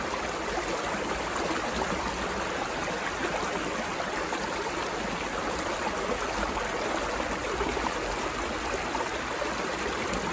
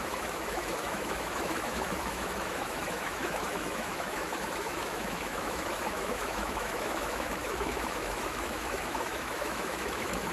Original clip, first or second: first